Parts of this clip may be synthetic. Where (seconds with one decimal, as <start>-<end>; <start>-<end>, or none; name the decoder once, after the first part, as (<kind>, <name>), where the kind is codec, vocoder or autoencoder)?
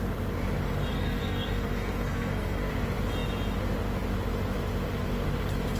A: 0.9-2.7 (codec, SNAC)